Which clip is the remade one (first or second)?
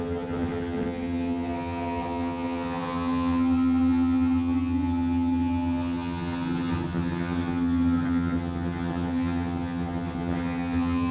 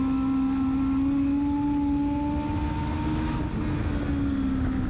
first